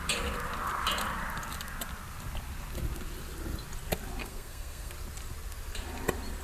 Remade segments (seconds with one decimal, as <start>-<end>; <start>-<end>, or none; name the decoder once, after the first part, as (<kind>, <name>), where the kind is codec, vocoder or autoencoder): 4.2-4.9 (codec, SNAC)